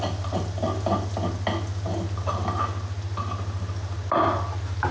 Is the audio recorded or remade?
recorded